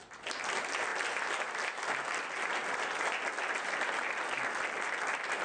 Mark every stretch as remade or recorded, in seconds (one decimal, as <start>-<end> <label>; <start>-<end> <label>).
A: 0.0-0.9 recorded; 0.9-2.2 remade; 2.2-5.4 recorded